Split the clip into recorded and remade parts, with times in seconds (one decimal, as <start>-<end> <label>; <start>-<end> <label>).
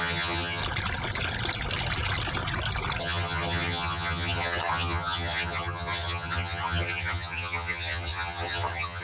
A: 0.0-0.6 remade; 0.6-3.0 recorded; 3.0-9.0 remade